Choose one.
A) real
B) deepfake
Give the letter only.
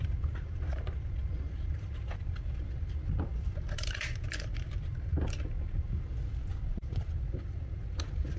B